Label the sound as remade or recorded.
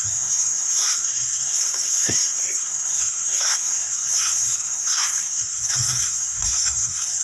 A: remade